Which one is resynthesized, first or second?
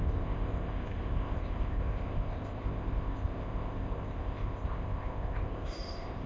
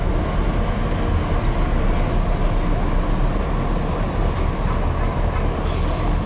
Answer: first